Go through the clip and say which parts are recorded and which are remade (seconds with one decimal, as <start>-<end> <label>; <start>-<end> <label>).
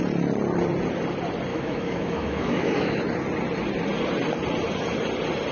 0.0-1.5 recorded; 1.5-3.0 remade; 3.0-5.5 recorded